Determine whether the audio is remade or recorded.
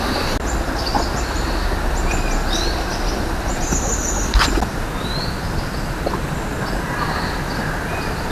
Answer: recorded